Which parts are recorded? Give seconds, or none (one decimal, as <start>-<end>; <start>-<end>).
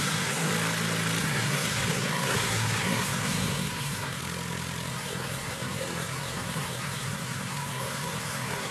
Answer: 0.5-1.2; 4.2-4.9